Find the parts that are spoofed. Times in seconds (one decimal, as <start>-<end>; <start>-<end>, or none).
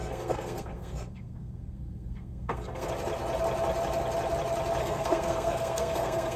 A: 0.0-2.9; 4.8-6.4